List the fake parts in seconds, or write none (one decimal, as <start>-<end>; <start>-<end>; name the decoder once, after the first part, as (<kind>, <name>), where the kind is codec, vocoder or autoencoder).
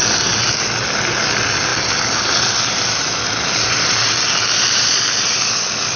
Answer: none